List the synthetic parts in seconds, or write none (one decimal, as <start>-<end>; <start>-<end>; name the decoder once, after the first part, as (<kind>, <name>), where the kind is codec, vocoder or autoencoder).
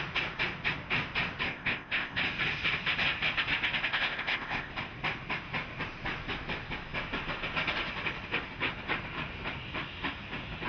1.5-2.2 (codec, ZipCodec); 3.9-4.7